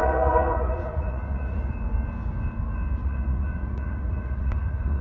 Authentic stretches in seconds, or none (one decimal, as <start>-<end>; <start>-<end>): 1.7-3.0